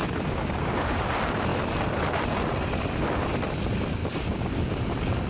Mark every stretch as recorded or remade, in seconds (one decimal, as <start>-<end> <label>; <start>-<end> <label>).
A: 0.0-1.1 remade; 1.1-4.0 recorded; 4.0-4.7 remade; 4.7-5.3 recorded